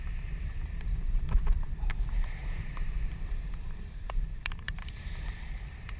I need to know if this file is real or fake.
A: fake